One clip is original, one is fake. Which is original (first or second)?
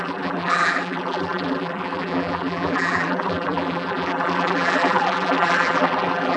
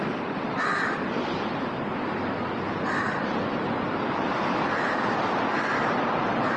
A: second